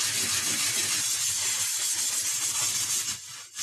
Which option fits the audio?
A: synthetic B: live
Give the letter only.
B